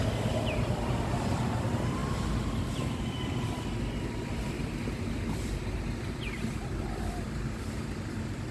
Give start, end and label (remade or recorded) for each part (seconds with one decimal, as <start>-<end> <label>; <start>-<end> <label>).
0.0-8.5 recorded